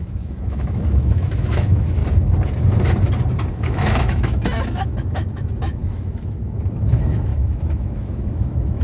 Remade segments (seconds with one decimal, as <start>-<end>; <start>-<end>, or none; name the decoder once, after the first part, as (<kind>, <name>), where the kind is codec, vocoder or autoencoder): 0.0-2.0 (autoencoder, DAC-VAE); 3.5-8.8